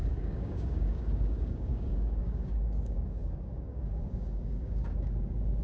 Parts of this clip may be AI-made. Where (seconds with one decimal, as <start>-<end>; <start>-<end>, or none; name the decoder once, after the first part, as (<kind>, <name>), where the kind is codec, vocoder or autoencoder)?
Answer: 0.0-5.6 (codec, DAC)